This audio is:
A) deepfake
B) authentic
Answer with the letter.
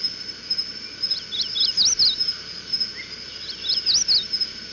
B